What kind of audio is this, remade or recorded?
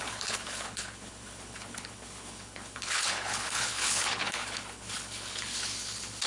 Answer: remade